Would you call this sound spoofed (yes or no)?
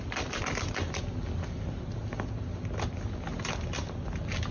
no